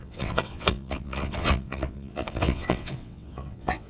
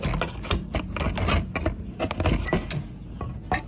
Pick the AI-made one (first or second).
first